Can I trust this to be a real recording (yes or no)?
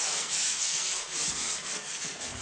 no